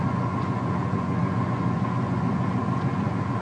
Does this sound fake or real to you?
fake